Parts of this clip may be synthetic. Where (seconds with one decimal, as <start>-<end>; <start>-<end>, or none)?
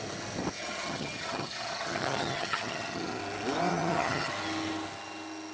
0.6-3.2; 3.7-4.3